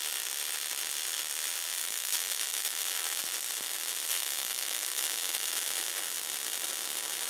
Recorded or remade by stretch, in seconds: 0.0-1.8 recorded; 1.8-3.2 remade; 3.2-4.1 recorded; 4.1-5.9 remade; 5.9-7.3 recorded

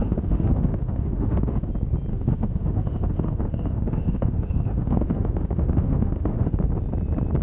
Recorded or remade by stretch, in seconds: 0.0-1.7 remade; 1.7-2.1 recorded; 2.1-6.5 remade; 6.5-7.4 recorded